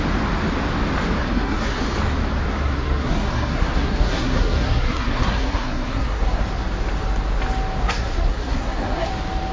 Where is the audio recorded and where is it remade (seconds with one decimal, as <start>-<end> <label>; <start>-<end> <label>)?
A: 0.0-1.2 recorded; 1.2-1.8 remade; 1.8-2.5 recorded; 2.5-6.4 remade; 6.4-7.8 recorded; 7.8-9.1 remade; 9.1-9.5 recorded